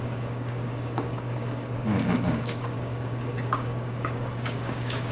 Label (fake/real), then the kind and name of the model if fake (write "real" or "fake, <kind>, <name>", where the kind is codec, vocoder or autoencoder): fake, codec, DAC